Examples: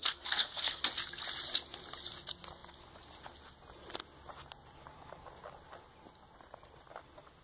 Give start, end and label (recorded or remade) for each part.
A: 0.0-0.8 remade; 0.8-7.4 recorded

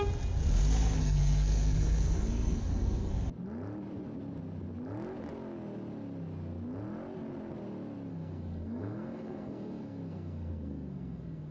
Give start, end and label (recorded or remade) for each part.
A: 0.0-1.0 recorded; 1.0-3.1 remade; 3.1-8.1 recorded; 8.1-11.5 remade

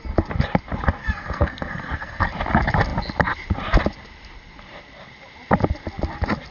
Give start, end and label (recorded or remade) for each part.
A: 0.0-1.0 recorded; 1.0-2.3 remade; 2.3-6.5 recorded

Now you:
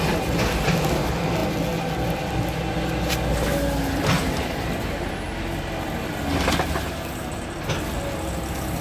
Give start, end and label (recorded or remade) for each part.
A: 0.0-8.8 recorded